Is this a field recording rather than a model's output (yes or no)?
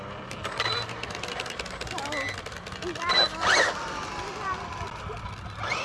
yes